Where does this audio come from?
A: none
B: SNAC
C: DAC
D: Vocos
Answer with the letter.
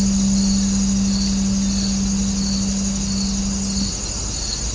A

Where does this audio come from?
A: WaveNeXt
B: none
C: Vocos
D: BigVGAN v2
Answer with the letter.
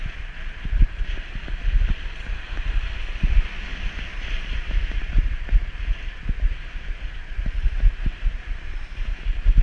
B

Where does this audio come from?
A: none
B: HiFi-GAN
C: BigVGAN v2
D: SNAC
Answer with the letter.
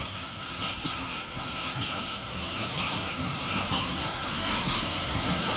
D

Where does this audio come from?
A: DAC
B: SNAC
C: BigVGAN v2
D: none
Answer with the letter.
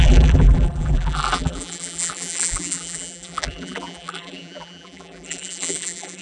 C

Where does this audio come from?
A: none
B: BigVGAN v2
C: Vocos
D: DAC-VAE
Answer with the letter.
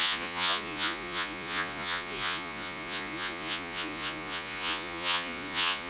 C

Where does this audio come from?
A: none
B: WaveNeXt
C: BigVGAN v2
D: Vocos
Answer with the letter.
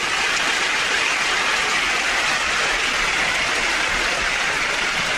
A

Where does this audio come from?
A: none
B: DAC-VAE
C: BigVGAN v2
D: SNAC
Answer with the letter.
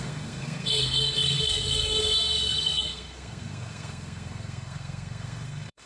D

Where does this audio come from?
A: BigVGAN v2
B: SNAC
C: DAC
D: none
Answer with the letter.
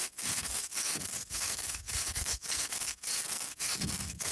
B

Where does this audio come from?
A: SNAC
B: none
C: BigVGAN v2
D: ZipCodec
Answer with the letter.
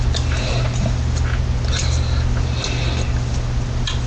B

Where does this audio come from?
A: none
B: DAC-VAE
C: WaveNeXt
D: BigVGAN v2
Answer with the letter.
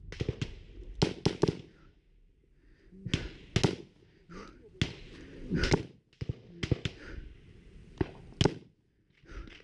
A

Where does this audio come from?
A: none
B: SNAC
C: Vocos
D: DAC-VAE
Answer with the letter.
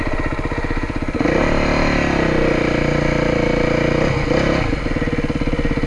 A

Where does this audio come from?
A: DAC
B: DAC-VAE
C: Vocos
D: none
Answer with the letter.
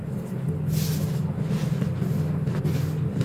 D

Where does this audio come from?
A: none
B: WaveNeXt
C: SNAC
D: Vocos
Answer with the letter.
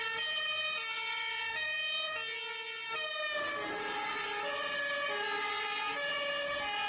A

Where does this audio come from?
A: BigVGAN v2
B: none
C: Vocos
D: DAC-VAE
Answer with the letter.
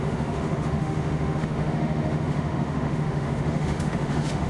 D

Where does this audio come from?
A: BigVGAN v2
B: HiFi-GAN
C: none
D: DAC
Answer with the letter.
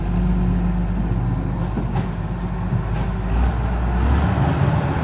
C